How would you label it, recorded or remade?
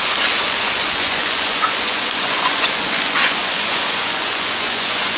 remade